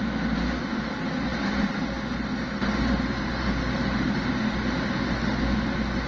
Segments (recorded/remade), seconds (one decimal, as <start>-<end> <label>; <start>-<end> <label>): 0.0-6.1 recorded